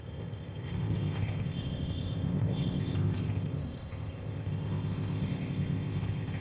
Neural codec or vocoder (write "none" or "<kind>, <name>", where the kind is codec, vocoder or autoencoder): codec, ZipCodec